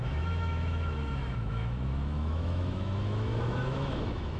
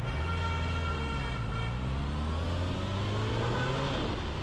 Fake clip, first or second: first